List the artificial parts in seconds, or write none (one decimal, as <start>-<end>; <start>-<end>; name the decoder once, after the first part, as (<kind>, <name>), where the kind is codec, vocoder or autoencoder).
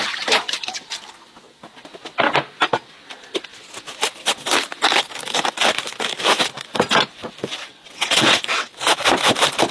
7.7-8.7 (vocoder, WaveNeXt)